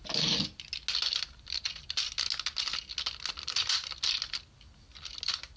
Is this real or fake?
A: real